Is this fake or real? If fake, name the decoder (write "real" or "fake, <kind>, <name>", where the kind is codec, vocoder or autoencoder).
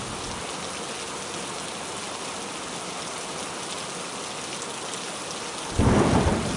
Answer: real